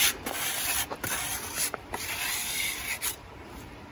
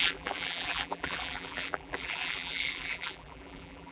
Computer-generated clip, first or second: second